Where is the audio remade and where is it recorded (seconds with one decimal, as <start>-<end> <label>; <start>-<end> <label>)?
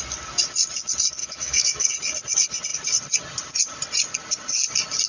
0.0-1.2 recorded; 1.2-1.9 remade; 1.9-5.1 recorded